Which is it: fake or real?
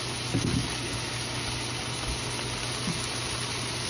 real